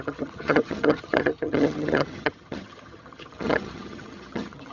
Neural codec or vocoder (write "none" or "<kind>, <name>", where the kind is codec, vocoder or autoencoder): vocoder, HiFi-GAN